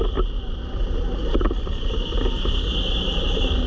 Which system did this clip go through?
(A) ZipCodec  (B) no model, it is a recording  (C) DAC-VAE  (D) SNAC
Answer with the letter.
B